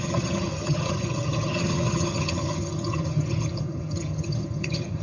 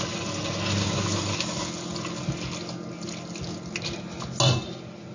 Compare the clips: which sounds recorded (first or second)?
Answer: second